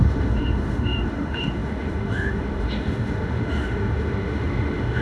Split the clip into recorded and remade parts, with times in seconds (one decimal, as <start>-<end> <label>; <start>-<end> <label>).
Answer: 0.0-5.0 remade